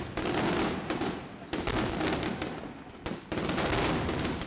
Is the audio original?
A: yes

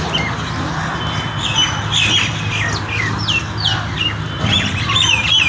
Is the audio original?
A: yes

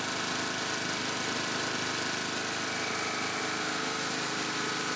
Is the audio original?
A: yes